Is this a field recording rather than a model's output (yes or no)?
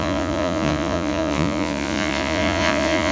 no